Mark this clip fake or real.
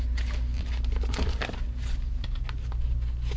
real